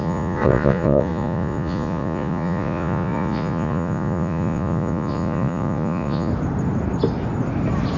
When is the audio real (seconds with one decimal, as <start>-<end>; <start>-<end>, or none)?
6.3-8.0